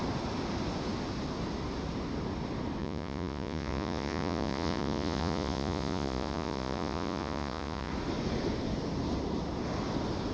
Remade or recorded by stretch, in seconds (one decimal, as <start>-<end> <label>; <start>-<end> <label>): 0.0-2.8 recorded; 2.8-7.9 remade; 7.9-10.3 recorded